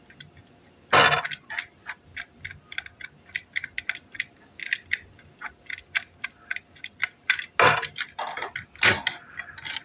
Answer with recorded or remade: recorded